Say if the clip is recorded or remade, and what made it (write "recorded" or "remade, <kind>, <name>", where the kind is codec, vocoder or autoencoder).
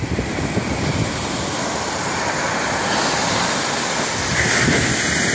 recorded